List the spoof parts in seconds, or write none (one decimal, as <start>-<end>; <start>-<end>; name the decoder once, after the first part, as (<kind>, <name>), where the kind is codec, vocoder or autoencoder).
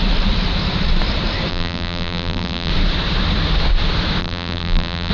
1.5-2.7 (vocoder, BigVGAN v2); 4.2-5.1